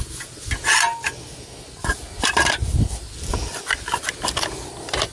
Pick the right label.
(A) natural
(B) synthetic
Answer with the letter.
A